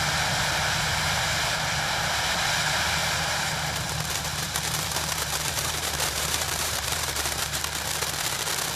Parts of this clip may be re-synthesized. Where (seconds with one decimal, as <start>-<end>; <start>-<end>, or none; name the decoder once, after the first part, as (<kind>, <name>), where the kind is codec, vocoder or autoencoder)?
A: 3.0-7.6 (vocoder, BigVGAN v2)